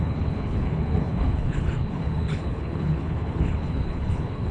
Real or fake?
fake